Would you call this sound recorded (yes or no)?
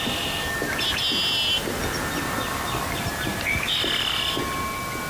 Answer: yes